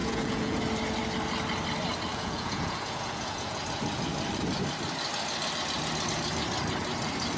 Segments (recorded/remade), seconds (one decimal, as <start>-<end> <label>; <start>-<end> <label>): 0.0-0.6 remade; 0.6-2.1 recorded; 2.1-3.6 remade; 3.6-7.4 recorded